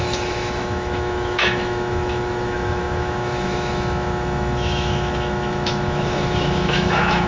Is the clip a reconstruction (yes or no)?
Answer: yes